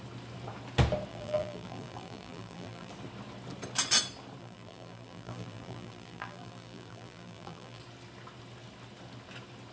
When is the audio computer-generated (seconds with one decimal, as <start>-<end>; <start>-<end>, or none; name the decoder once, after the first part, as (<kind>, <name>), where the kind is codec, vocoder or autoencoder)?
1.1-2.9 (vocoder, BigVGAN v2); 4.4-7.8